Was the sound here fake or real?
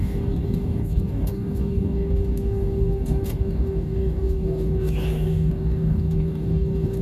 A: fake